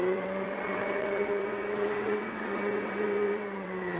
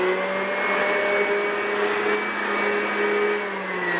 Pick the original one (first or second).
second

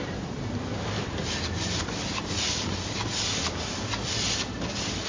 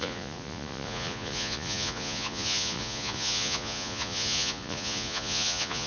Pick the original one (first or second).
first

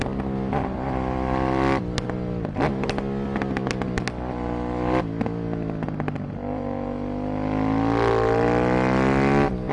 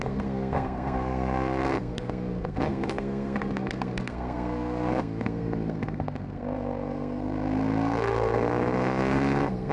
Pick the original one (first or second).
first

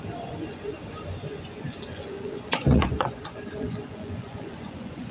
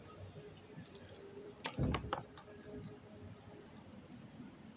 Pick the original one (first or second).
second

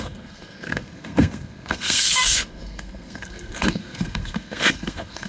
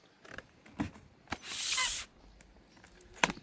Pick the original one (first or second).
second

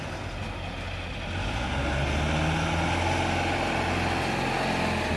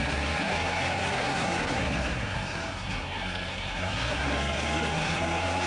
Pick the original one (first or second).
first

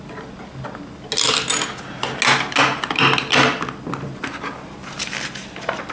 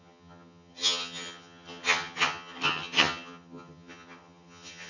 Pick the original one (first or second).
first